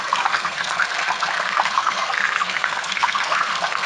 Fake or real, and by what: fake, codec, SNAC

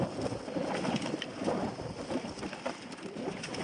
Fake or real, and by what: real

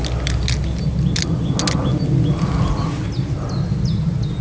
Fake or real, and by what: real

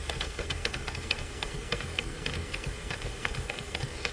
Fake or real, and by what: fake, codec, SNAC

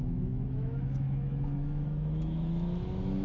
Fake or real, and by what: fake, autoencoder, DAC-VAE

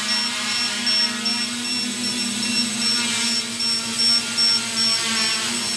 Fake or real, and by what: real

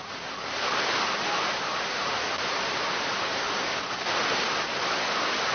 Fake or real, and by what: real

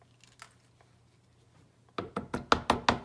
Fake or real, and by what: real